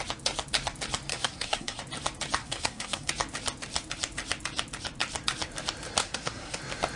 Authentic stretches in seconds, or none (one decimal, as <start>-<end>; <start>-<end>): 0.0-1.1; 1.8-2.4; 3.1-6.0; 6.6-7.0